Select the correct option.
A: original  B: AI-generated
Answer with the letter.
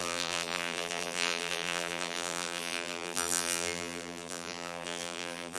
B